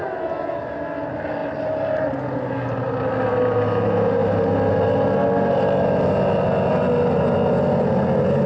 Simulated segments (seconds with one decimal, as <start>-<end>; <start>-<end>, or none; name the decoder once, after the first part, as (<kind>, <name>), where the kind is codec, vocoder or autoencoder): 1.4-2.2 (vocoder, BigVGAN v2)